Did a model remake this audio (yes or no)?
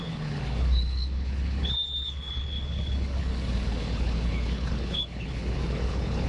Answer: yes